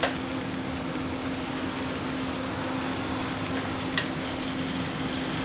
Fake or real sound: real